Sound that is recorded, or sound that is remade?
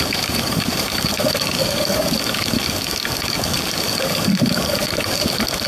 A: remade